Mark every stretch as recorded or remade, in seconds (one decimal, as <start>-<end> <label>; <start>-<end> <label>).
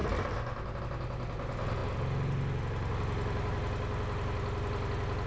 0.0-5.3 recorded